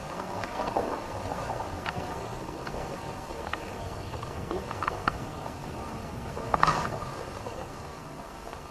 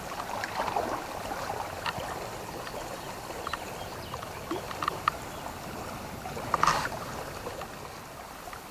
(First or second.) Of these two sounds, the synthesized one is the first